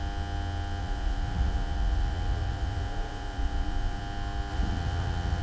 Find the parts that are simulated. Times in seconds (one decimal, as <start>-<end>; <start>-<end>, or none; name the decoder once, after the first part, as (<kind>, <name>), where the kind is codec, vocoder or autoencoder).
0.8-4.0 (vocoder, Vocos); 4.5-5.4